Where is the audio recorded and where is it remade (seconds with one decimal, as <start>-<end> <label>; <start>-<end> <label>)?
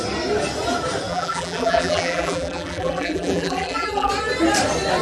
0.0-1.1 recorded; 1.1-4.1 remade; 4.1-5.0 recorded